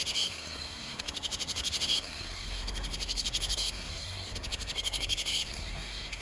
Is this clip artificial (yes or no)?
yes